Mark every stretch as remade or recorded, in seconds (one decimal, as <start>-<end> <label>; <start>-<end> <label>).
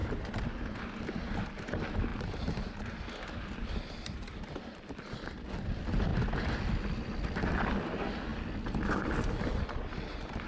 0.0-10.5 recorded